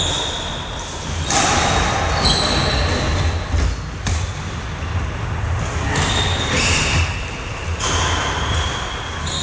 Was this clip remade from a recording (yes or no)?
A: no